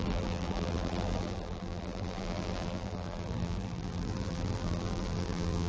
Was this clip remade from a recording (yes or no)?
yes